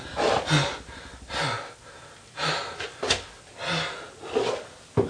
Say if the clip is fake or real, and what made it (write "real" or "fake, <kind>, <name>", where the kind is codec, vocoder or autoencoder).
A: real